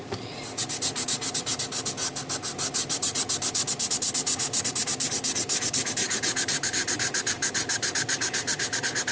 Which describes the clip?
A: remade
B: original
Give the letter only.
B